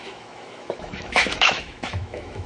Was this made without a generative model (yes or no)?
no